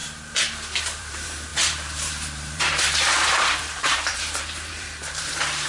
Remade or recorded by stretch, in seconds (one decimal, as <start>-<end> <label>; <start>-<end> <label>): 0.0-0.8 recorded; 0.8-5.7 remade